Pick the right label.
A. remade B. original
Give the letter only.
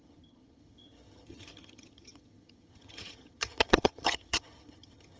A